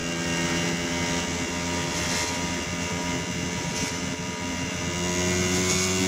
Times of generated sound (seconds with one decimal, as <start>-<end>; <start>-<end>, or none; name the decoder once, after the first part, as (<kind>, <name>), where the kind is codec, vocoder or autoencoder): none